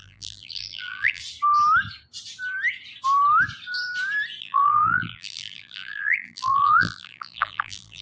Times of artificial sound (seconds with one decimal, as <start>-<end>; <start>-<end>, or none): 0.0-1.2; 4.4-8.0